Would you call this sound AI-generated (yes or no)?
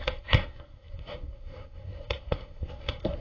yes